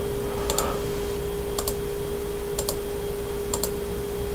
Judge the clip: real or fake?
real